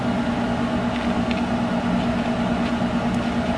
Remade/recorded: recorded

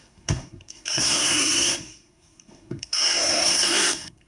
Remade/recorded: remade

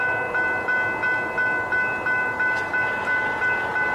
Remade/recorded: recorded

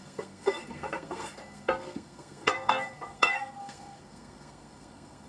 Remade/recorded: remade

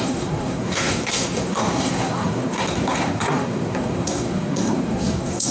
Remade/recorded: remade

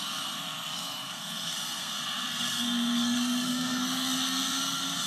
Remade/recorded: remade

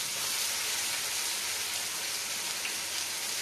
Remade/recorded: recorded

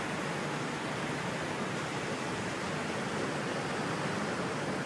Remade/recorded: recorded